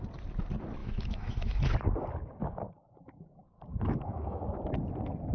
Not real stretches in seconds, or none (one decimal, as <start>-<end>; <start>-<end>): 0.8-1.6; 2.4-4.4